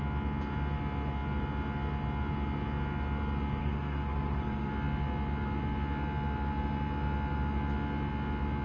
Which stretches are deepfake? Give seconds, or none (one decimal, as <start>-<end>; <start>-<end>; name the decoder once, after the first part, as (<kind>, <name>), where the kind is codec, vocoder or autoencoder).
3.6-4.7 (codec, SNAC)